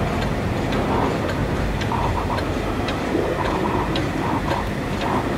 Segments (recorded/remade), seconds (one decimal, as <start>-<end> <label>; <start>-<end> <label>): 0.0-1.4 recorded; 1.4-4.5 remade; 4.5-5.4 recorded